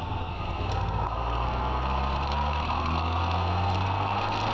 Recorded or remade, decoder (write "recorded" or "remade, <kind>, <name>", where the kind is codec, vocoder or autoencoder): remade, codec, SNAC